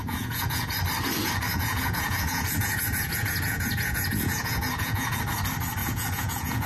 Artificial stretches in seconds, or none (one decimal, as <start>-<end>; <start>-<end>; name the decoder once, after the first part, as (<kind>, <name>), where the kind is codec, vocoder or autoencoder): 0.0-0.7 (vocoder, Vocos); 1.5-5.2; 5.8-6.7